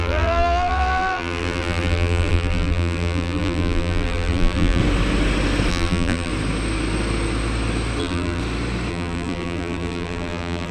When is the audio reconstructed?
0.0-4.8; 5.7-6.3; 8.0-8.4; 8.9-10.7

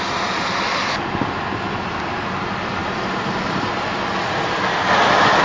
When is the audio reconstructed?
2.8-3.9

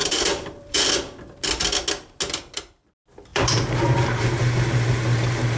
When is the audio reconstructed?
0.0-0.9; 3.3-4.7

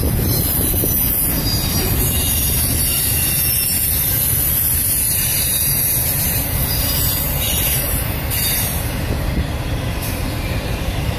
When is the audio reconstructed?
0.0-11.2